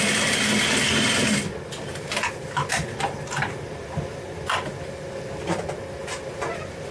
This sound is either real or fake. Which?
real